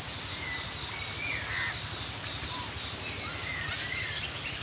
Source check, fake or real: real